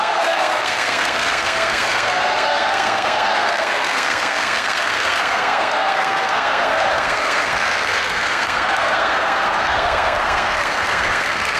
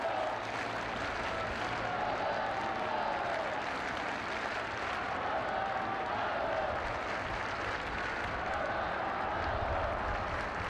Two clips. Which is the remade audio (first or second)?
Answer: first